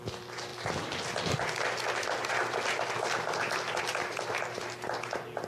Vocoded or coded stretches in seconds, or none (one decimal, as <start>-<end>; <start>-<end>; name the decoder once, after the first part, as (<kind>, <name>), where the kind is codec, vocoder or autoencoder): none